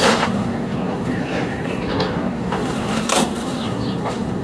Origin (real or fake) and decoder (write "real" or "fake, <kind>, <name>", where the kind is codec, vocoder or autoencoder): fake, codec, SNAC